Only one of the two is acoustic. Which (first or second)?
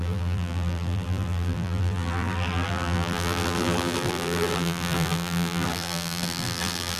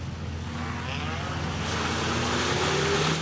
second